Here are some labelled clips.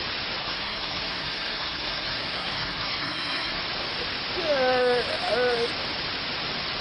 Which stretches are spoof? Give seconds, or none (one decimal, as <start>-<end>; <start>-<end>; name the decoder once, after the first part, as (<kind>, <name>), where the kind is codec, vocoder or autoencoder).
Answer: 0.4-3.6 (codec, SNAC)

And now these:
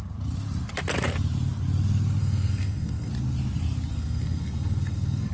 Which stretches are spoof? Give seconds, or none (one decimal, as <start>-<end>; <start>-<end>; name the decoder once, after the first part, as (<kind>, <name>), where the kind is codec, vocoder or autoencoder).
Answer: 2.2-3.1 (codec, SNAC); 3.9-5.3

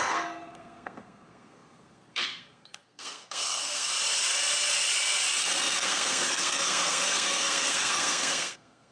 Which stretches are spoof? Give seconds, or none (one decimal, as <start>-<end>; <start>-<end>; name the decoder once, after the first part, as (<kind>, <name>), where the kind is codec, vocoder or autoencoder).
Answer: 0.0-3.9 (codec, SNAC); 5.4-8.9

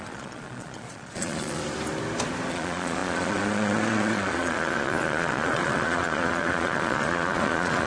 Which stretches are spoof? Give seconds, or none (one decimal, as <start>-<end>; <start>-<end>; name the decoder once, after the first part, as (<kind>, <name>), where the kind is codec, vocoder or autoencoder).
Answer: 0.0-1.6 (vocoder, Vocos); 2.5-7.9

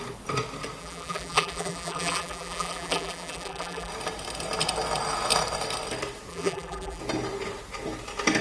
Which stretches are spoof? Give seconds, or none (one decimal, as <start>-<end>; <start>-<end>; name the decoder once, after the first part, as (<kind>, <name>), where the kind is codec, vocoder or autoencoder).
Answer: 0.8-3.9 (vocoder, BigVGAN v2); 6.3-7.0